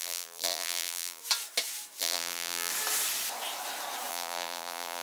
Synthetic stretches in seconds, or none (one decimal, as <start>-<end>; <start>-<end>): 0.0-1.2; 2.0-2.7; 4.1-5.0